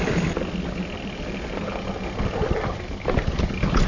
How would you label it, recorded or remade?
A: recorded